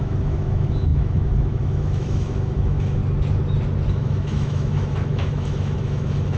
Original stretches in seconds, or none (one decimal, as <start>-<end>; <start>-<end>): 3.0-3.9